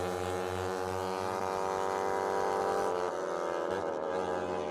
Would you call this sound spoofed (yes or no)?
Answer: no